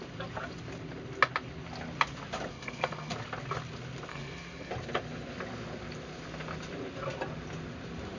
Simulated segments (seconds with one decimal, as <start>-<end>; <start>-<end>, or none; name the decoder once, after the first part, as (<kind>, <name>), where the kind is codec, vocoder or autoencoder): 2.5-3.1 (codec, SNAC); 4.1-4.7